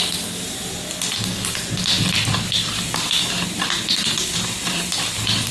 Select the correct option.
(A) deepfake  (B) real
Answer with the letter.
B